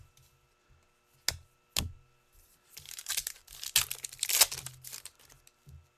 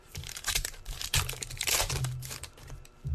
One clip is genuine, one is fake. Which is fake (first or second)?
second